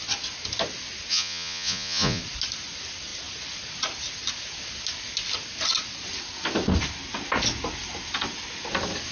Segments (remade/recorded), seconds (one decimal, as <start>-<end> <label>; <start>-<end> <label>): 0.0-1.1 recorded; 1.1-2.2 remade; 2.2-9.1 recorded

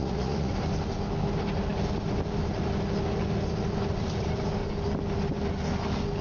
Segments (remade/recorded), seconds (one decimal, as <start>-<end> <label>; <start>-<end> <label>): 0.0-0.5 remade; 0.5-6.2 recorded

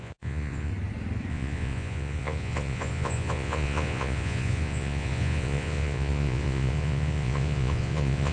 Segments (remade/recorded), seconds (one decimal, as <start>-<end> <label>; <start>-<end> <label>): 0.0-0.7 remade; 0.7-1.3 recorded; 1.3-8.3 remade

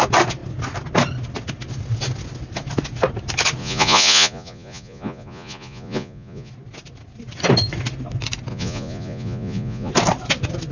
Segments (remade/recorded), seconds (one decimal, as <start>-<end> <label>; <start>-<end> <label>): 0.0-3.6 recorded; 3.6-6.5 remade; 6.5-8.5 recorded; 8.5-9.9 remade; 9.9-10.7 recorded

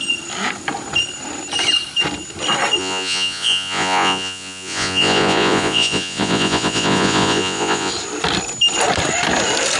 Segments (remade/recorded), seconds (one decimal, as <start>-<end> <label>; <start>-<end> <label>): 0.0-2.8 recorded; 2.8-7.9 remade; 7.9-9.8 recorded

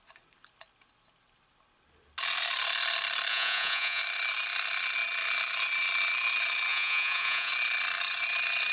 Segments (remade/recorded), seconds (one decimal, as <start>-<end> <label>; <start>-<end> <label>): 0.0-3.3 recorded; 3.3-4.0 remade; 4.0-6.7 recorded; 6.7-7.5 remade; 7.5-8.7 recorded

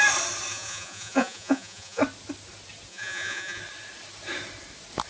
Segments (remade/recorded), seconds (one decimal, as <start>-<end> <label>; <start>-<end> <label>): 0.0-0.5 recorded; 0.5-2.0 remade; 2.0-2.9 recorded; 2.9-3.6 remade; 3.6-5.1 recorded

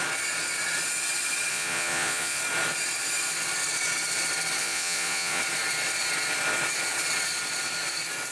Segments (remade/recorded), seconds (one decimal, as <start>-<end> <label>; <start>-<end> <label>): 0.0-1.5 recorded; 1.5-2.4 remade; 2.4-4.6 recorded; 4.6-5.4 remade; 5.4-8.3 recorded